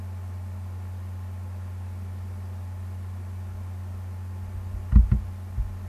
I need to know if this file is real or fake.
real